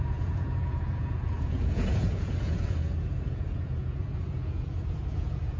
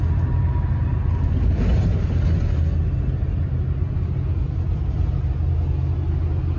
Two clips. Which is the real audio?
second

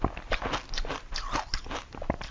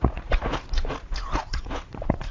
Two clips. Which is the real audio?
first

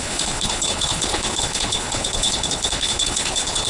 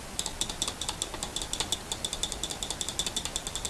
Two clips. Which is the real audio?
second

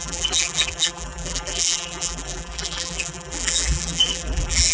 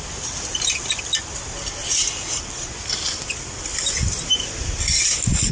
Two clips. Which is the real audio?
second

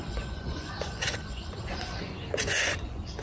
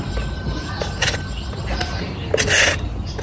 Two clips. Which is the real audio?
second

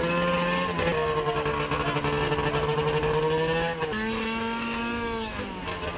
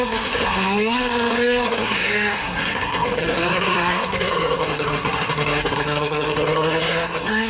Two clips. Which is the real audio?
first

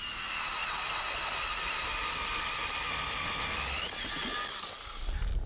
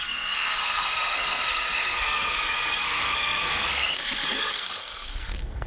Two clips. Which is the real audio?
first